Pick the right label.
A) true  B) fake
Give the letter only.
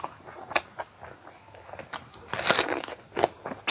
A